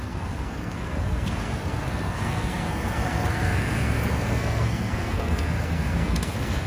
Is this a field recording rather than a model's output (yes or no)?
no